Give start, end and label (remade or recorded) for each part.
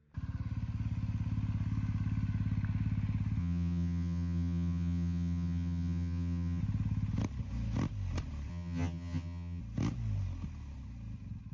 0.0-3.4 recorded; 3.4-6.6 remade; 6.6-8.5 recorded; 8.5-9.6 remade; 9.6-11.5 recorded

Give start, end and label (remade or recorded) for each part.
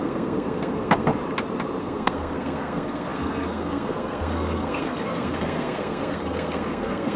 0.0-1.1 remade; 1.1-1.8 recorded; 1.8-7.2 remade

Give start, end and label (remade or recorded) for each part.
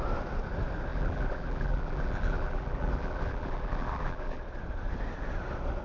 0.0-0.9 recorded; 0.9-4.4 remade; 4.4-5.8 recorded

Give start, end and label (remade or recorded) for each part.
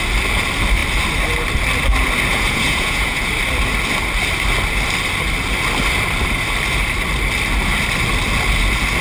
0.0-2.3 recorded; 2.3-3.3 remade; 3.3-9.0 recorded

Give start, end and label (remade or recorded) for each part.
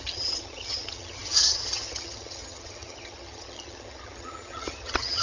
0.0-5.2 remade